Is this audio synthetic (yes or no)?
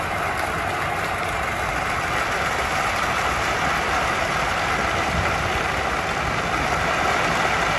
no